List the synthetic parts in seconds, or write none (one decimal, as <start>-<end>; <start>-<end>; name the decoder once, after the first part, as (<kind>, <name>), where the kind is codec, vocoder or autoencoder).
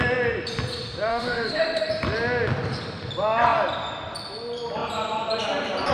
1.1-1.9 (autoencoder, DAC-VAE)